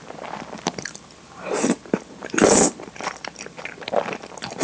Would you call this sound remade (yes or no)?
yes